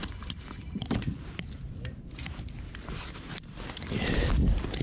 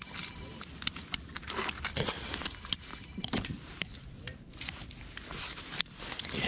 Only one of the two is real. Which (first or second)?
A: second